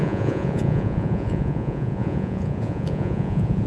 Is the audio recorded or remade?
remade